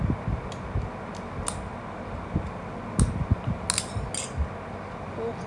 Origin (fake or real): real